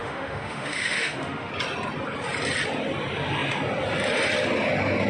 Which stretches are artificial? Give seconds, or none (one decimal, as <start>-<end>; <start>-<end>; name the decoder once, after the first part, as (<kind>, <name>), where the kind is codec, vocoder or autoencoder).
0.0-1.5 (autoencoder, DAC-VAE)